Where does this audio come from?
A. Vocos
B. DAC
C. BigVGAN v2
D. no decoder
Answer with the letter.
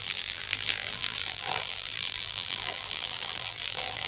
C